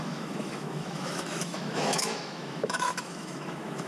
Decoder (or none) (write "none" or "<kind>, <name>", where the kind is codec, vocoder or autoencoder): autoencoder, DAC-VAE